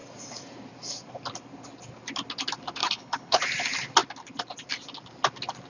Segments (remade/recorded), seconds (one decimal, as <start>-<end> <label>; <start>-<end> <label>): 0.0-2.8 recorded; 2.8-3.4 remade; 3.4-5.7 recorded